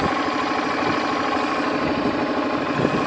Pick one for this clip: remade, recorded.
recorded